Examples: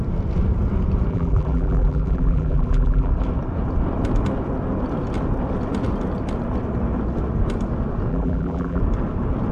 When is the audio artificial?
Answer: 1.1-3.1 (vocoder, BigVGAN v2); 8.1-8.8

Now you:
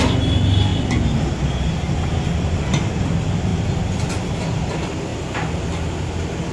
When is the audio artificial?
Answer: none

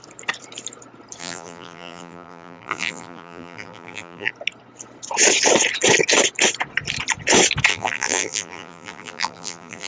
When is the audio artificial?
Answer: 1.2-4.3 (vocoder, BigVGAN v2); 7.7-9.9

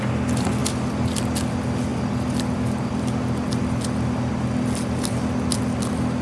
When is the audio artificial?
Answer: none

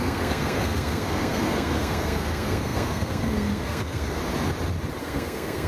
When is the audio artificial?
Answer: 0.0-4.2 (codec, SNAC); 5.0-5.7

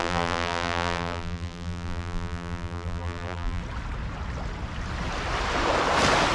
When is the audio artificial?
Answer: 0.0-3.6 (vocoder, BigVGAN v2)

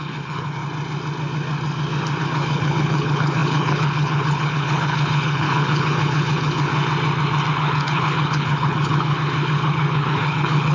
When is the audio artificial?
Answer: 0.0-0.6 (codec, HILCodec); 2.2-6.7; 7.5-10.7